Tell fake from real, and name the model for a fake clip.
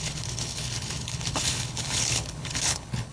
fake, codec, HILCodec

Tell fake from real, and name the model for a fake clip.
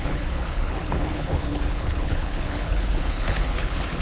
fake, codec, HILCodec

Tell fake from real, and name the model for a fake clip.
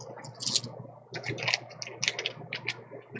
real